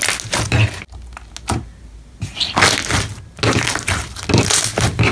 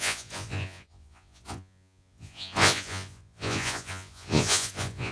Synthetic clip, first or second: second